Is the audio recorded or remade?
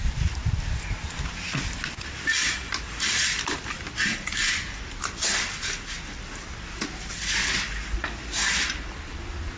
recorded